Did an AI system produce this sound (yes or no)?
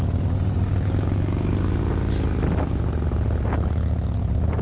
no